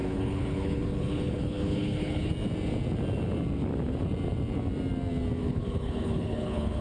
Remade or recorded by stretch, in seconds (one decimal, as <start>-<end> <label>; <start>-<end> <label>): 0.0-2.3 remade; 2.3-5.4 recorded; 5.4-6.8 remade